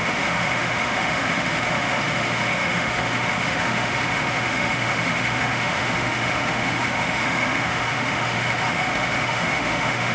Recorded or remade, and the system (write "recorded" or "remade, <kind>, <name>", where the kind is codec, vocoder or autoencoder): remade, autoencoder, DAC-VAE